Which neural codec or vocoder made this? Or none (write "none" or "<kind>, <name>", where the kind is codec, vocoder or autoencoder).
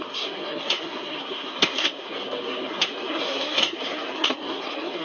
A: codec, SNAC